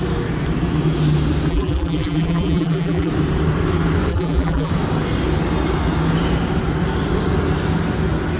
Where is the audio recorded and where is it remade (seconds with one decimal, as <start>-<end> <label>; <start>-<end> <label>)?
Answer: 0.0-1.5 recorded; 1.5-3.1 remade; 3.1-4.1 recorded; 4.1-4.7 remade; 4.7-8.4 recorded